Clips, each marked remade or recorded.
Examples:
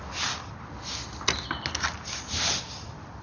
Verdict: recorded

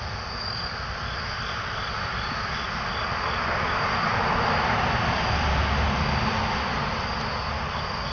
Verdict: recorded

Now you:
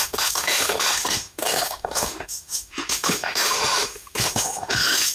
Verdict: remade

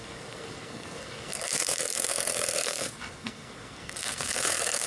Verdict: remade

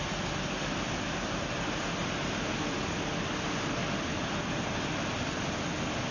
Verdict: recorded